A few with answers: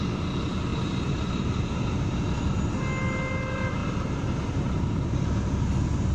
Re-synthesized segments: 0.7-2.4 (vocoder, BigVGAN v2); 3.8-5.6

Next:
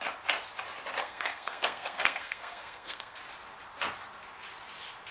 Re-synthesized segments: 1.0-3.2 (codec, SNAC)

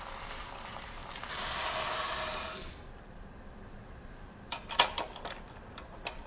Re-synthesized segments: 0.0-1.0 (vocoder, BigVGAN v2); 2.7-6.3

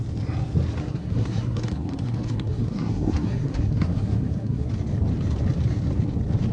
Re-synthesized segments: 0.8-4.7 (codec, SNAC)

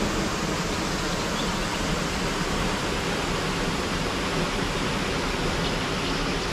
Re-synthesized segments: none

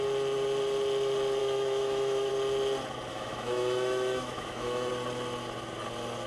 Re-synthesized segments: 1.4-2.3 (autoencoder, DAC-VAE); 3.1-4.9

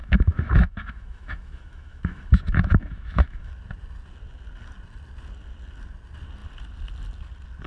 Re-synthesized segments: 0.0-3.5 (autoencoder, DAC-VAE)

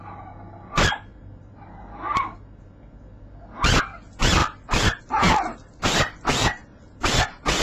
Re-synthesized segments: none